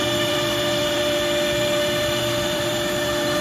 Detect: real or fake fake